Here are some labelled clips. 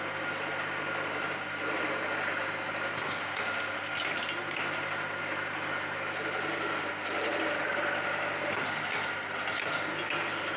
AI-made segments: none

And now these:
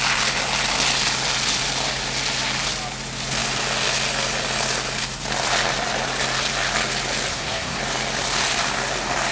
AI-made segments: 7.3-7.8

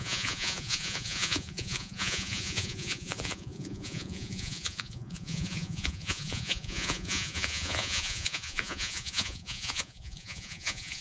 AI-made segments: 0.0-11.0

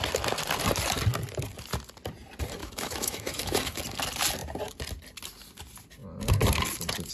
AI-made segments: 2.6-3.8